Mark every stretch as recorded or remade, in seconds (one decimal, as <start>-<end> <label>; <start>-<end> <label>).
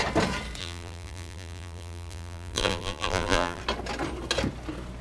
0.0-0.6 recorded; 0.6-3.6 remade; 3.6-5.0 recorded